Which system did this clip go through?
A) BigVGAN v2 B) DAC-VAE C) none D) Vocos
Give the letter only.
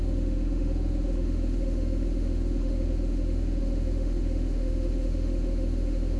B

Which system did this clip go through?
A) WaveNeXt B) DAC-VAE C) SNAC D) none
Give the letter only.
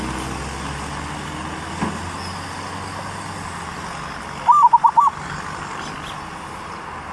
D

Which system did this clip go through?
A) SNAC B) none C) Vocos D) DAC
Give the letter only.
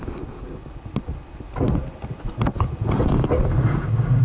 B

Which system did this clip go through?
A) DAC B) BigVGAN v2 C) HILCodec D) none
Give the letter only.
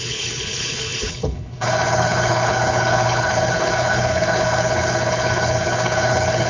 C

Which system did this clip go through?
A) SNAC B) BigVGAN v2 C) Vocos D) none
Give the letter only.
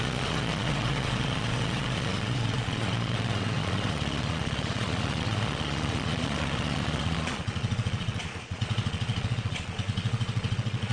C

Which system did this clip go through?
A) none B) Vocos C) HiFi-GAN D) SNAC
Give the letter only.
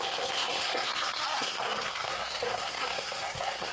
D